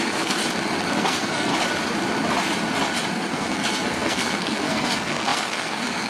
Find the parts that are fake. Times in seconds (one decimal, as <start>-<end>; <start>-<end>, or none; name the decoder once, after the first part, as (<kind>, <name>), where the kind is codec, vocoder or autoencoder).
0.0-0.4 (codec, SNAC); 0.9-1.5; 3.1-6.1